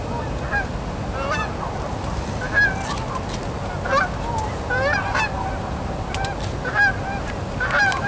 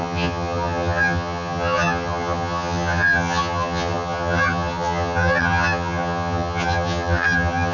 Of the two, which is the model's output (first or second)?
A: second